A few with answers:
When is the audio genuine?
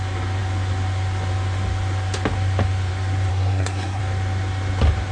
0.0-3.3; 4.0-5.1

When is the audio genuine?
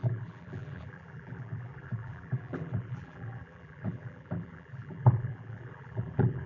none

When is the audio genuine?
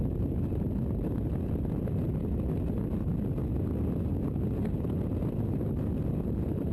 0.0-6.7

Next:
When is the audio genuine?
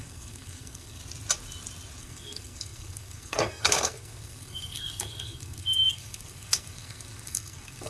1.0-2.0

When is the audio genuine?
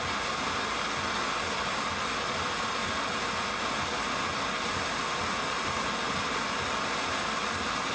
0.0-7.9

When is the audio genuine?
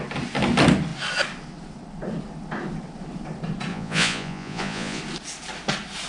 0.0-3.7; 5.0-6.1